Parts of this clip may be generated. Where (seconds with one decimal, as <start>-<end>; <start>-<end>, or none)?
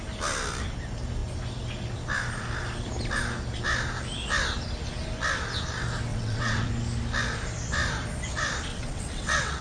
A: 6.1-6.7; 8.7-9.6